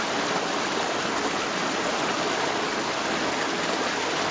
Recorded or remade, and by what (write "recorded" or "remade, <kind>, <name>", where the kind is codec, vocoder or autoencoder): recorded